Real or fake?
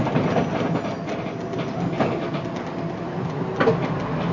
real